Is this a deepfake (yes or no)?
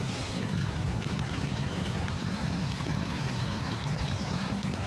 yes